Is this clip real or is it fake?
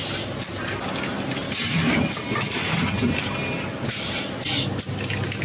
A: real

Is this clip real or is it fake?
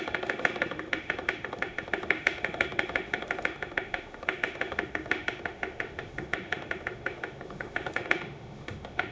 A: fake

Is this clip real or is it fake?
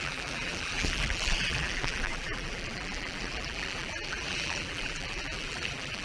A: fake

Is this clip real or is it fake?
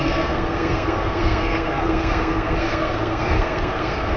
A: fake